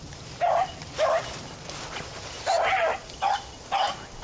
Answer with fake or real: real